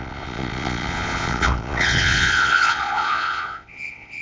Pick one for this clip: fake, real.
fake